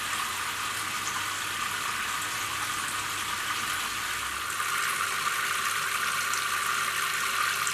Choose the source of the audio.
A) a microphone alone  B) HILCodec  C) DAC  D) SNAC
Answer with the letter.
A